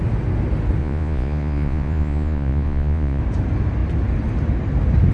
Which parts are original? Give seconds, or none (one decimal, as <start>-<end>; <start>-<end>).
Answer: 0.0-0.8; 3.2-5.1